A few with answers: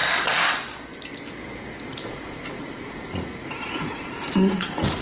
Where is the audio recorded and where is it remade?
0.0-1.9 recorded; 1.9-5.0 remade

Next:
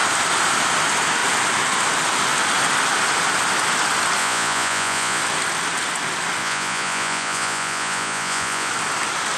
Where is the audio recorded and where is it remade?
0.0-4.2 recorded; 4.2-5.2 remade; 5.2-6.4 recorded; 6.4-8.7 remade; 8.7-9.4 recorded

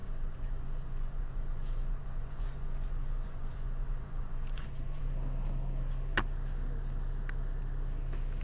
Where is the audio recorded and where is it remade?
0.0-5.0 remade; 5.0-8.4 recorded

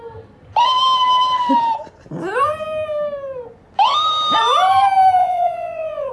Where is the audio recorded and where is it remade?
0.0-5.2 recorded; 5.2-6.1 remade

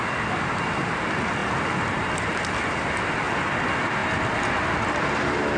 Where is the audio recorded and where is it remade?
0.0-5.6 recorded

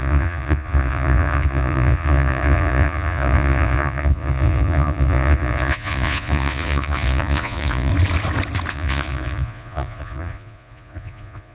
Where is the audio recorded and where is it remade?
0.0-7.9 remade; 7.9-8.7 recorded; 8.7-11.5 remade

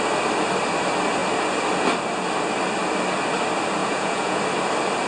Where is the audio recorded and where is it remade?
0.0-3.8 recorded; 3.8-4.4 remade; 4.4-5.1 recorded